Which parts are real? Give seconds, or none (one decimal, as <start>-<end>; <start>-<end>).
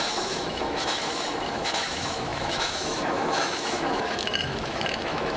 none